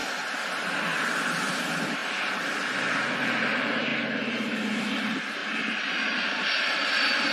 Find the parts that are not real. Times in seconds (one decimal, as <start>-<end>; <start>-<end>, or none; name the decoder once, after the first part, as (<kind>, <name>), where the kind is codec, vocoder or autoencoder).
1.5-2.0 (vocoder, BigVGAN v2); 3.2-5.4; 6.2-7.3